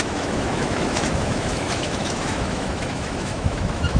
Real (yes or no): no